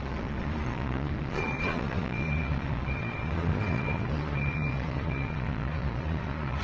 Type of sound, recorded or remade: remade